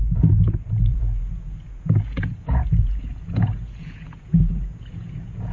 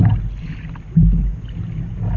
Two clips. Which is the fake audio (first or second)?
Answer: first